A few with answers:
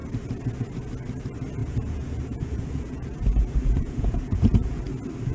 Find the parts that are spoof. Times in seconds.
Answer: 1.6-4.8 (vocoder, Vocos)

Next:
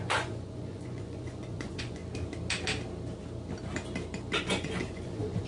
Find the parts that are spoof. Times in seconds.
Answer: 0.0-2.0 (vocoder, Vocos); 4.4-5.5

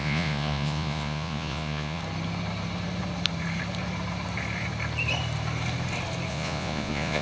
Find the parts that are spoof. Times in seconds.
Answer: 0.0-2.0 (vocoder, Vocos); 6.3-7.2